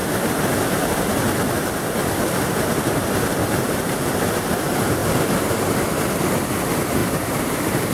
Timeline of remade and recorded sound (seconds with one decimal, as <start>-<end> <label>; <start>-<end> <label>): 0.0-1.5 remade; 1.5-3.4 recorded; 3.4-4.3 remade; 4.3-7.0 recorded; 7.0-7.9 remade